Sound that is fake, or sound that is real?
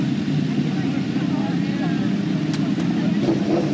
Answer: real